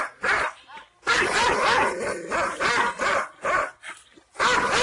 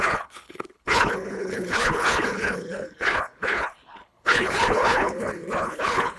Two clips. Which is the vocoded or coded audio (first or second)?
second